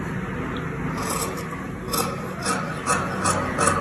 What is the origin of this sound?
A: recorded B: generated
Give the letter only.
A